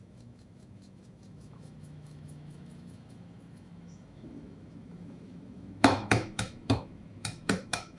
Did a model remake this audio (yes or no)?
yes